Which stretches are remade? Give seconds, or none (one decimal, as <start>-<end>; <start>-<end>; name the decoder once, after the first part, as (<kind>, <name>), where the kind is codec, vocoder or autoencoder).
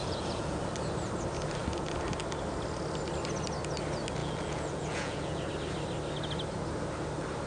0.0-0.6 (vocoder, Vocos); 4.2-5.5